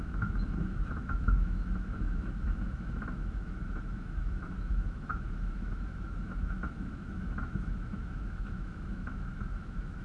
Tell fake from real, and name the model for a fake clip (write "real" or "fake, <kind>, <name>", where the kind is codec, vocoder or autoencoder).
fake, autoencoder, DAC-VAE